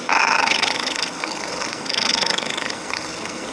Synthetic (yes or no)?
yes